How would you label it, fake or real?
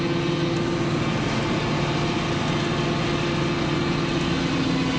real